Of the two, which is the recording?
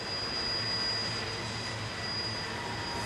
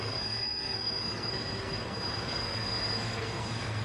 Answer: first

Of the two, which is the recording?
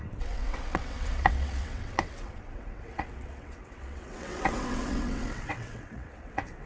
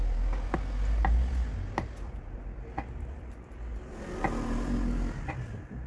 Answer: second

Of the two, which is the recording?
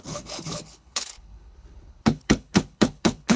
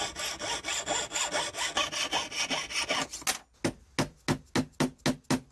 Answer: second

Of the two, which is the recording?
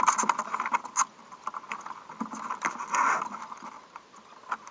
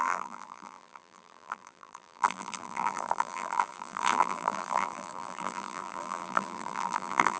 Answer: first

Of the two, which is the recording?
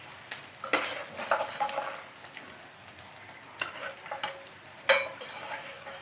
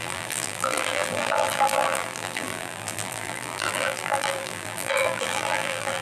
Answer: first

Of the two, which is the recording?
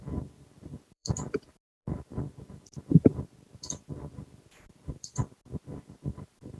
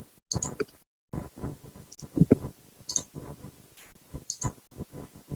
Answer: second